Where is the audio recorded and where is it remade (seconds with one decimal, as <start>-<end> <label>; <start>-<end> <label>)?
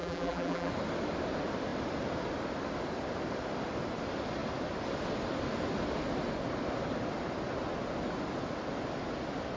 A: 0.0-0.7 remade; 0.7-9.6 recorded